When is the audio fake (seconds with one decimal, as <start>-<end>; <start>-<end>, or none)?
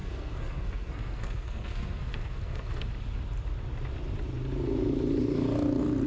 0.0-2.9